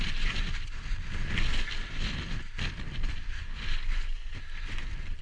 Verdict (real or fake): real